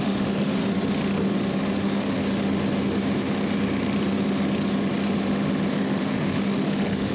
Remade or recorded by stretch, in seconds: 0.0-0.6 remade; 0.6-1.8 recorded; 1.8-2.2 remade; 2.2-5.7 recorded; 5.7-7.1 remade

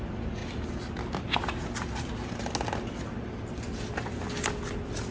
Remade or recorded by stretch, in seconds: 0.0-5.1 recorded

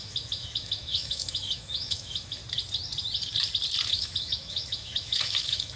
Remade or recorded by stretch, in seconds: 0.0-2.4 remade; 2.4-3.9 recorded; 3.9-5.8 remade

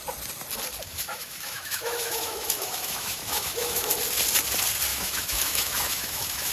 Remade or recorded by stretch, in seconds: 0.0-0.9 recorded; 0.9-3.9 remade; 3.9-4.9 recorded; 4.9-6.5 remade

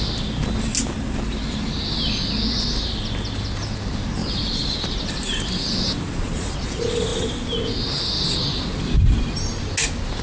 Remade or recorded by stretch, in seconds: 0.0-10.2 recorded

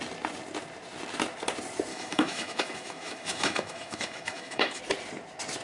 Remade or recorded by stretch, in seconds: 0.0-1.9 recorded; 1.9-4.8 remade; 4.8-5.6 recorded

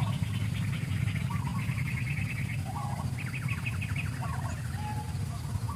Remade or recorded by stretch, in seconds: 0.0-5.8 recorded

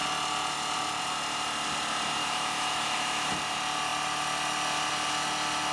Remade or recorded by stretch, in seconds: 0.0-2.2 recorded; 2.2-3.3 remade; 3.3-5.7 recorded